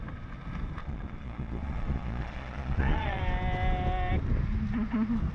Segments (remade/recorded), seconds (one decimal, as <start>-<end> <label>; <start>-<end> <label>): 0.0-0.8 recorded; 0.8-3.2 remade; 3.2-5.3 recorded